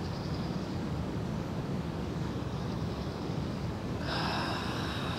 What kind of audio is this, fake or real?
fake